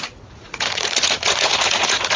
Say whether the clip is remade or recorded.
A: remade